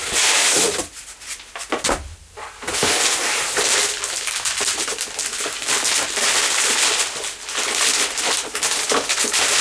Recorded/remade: recorded